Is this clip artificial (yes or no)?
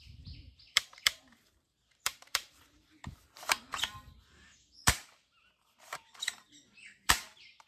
yes